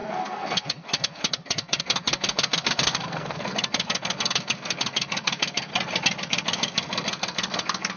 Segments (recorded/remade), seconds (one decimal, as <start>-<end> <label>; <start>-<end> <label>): 0.0-5.7 remade; 5.7-6.2 recorded; 6.2-8.0 remade